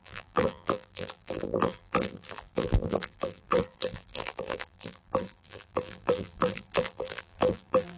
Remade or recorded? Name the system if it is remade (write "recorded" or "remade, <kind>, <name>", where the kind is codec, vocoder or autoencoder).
remade, vocoder, BigVGAN v2